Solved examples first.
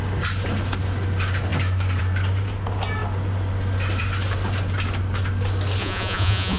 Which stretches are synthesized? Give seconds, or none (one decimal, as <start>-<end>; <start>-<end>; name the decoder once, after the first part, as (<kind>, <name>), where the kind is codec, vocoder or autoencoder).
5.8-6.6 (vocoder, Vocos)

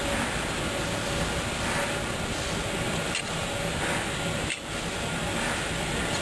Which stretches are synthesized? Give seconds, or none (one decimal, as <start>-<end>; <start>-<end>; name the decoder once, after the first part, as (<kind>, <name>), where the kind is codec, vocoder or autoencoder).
none

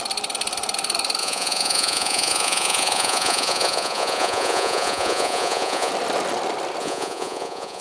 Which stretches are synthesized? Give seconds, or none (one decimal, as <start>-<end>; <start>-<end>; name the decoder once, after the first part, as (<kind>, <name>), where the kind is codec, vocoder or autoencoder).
1.2-5.9 (vocoder, Vocos); 6.8-7.8

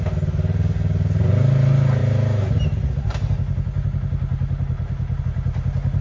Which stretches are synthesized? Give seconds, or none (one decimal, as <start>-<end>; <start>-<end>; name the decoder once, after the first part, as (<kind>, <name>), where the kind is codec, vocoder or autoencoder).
none